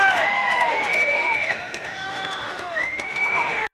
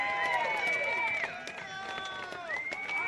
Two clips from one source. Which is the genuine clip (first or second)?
second